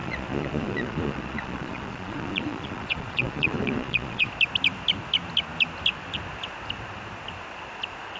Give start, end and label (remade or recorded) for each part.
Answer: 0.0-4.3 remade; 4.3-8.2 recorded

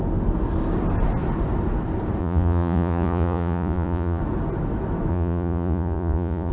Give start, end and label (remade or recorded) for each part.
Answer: 0.0-2.2 recorded; 2.2-4.2 remade; 4.2-5.1 recorded; 5.1-6.5 remade

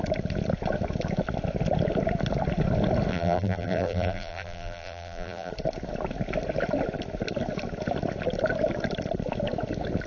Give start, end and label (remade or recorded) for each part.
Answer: 0.0-3.1 recorded; 3.1-5.5 remade; 5.5-10.1 recorded

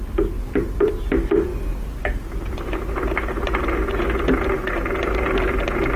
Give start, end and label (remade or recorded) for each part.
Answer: 0.0-6.0 recorded